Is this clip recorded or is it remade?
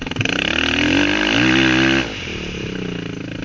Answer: recorded